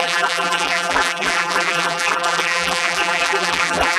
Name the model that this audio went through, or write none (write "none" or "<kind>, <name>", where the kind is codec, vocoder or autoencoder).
vocoder, BigVGAN v2